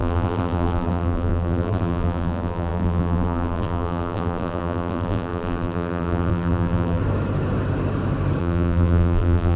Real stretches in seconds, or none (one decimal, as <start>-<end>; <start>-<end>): 7.0-8.4